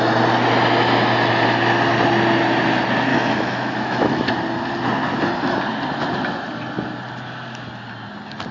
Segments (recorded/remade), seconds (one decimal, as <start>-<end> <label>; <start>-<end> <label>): 0.0-3.1 recorded; 3.1-4.3 remade; 4.3-8.5 recorded